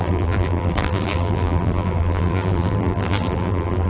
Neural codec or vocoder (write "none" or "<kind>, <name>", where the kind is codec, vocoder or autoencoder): vocoder, BigVGAN v2